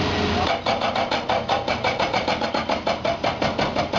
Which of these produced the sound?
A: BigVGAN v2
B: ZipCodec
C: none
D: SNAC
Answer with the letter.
C